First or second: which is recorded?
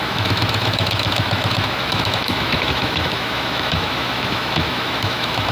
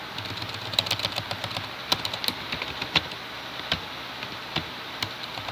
second